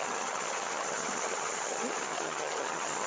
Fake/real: fake